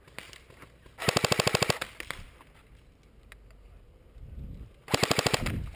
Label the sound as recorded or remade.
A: recorded